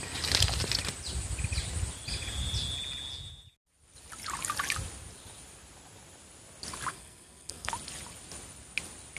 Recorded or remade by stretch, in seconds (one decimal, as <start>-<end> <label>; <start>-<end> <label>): 0.0-6.9 recorded; 6.9-7.7 remade; 7.7-9.2 recorded